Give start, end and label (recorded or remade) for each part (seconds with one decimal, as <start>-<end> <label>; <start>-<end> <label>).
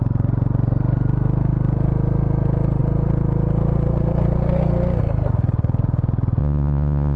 0.0-6.4 recorded; 6.4-7.2 remade